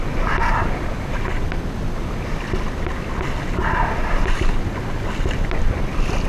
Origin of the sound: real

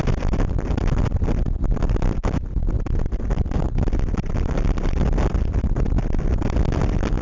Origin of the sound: real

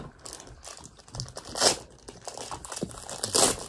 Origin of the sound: real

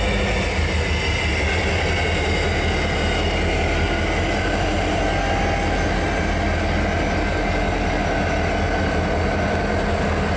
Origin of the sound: real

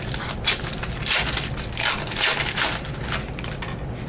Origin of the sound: real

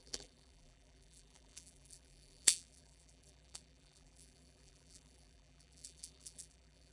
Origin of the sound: fake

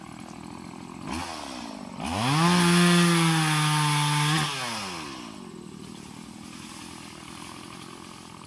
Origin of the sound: real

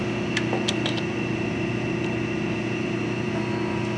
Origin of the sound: real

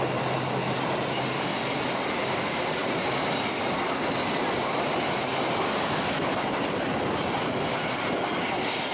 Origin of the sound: real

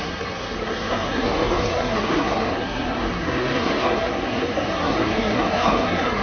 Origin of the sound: fake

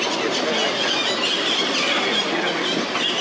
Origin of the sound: real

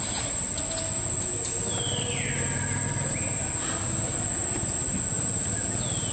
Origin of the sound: real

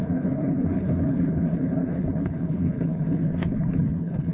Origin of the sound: fake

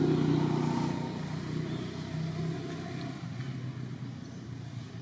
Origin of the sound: real